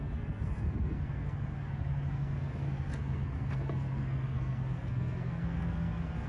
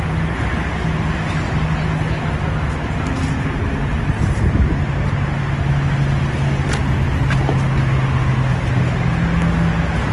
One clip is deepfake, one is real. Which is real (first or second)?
second